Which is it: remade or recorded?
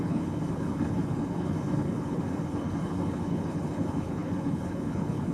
remade